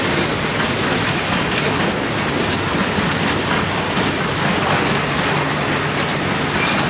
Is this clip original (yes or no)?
yes